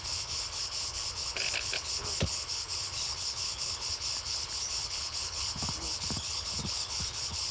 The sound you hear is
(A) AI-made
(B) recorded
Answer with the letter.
A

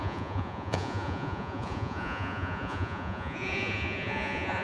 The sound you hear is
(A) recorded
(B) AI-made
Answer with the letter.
B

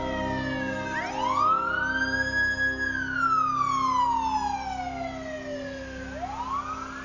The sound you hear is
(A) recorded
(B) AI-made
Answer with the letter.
A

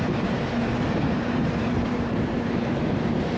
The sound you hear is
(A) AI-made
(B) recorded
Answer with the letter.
A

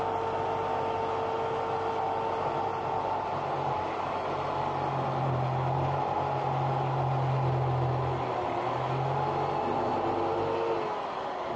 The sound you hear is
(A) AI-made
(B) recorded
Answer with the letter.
B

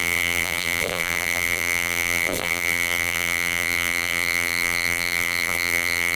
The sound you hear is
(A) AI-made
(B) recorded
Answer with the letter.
A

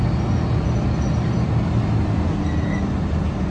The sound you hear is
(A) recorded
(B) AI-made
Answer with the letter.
A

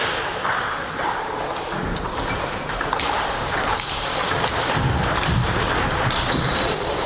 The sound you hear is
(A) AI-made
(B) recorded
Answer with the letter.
A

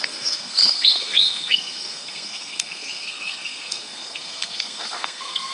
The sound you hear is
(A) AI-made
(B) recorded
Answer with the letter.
A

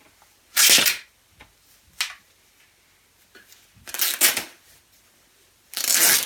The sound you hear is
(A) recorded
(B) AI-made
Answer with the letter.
A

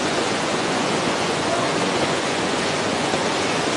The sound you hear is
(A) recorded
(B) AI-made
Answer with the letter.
B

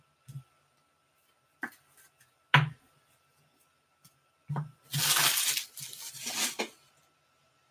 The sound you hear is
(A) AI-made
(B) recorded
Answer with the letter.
B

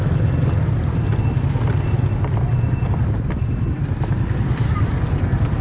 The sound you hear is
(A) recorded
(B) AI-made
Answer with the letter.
A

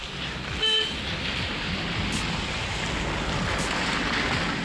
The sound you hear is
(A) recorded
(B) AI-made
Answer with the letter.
A